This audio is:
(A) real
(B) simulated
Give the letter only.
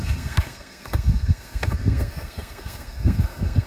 B